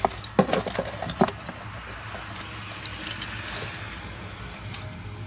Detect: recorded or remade recorded